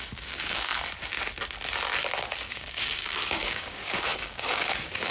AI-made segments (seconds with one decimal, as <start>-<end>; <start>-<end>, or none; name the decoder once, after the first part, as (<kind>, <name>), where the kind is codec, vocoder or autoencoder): 0.0-0.7 (codec, DAC); 2.5-5.1